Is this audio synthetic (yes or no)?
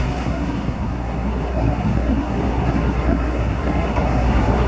yes